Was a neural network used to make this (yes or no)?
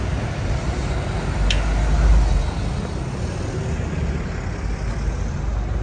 no